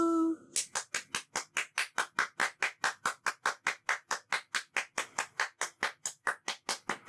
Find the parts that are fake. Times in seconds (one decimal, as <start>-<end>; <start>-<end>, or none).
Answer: none